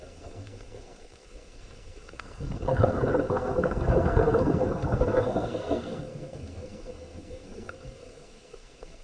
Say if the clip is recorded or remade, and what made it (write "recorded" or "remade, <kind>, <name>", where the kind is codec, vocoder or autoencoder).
remade, codec, SNAC